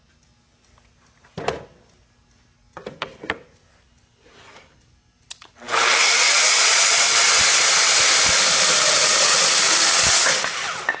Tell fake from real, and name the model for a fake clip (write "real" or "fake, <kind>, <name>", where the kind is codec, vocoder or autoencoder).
real